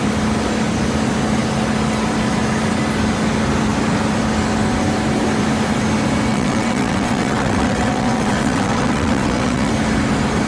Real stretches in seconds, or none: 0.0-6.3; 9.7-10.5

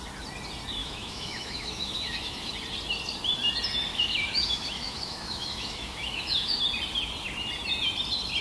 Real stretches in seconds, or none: 0.0-0.8; 2.5-3.9; 6.6-8.4

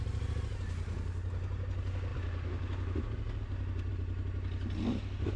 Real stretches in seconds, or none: 0.0-5.4

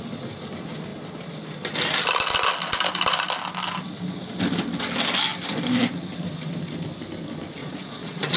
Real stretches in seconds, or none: 0.0-7.6

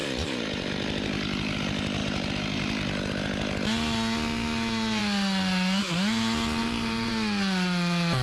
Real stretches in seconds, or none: 1.1-2.0; 2.7-6.6; 7.1-8.2

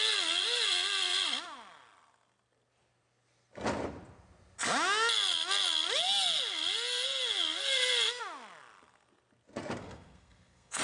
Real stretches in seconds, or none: 0.0-9.8